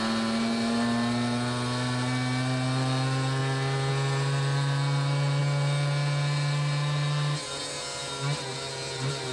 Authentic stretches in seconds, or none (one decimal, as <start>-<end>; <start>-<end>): 0.0-9.3